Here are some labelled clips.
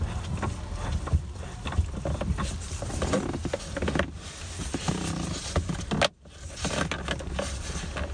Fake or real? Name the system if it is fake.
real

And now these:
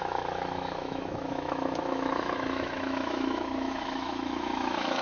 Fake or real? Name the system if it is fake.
fake, autoencoder, DAC-VAE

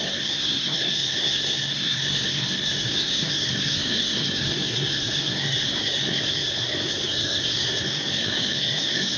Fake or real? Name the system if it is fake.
fake, codec, SNAC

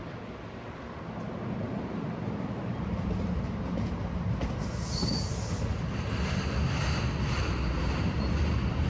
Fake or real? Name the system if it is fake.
real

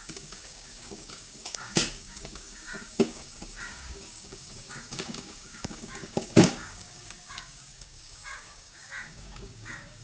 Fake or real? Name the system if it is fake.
fake, codec, DAC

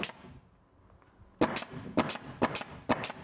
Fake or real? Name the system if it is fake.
real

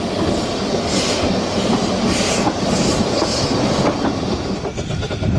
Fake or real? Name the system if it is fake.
real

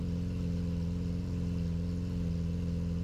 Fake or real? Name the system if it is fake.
real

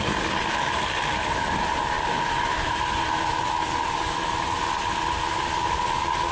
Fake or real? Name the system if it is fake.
real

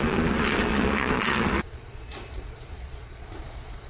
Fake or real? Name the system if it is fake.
fake, vocoder, Vocos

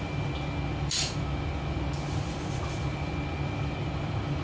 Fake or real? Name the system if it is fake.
real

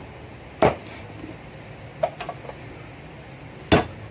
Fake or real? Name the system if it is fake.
real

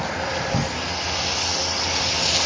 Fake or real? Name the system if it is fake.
real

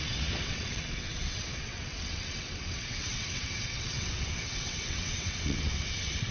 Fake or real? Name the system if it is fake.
fake, vocoder, WaveNeXt